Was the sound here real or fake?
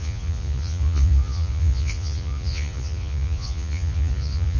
fake